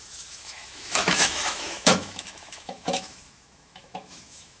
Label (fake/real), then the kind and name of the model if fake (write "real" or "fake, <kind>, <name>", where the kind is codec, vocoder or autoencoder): fake, autoencoder, DAC-VAE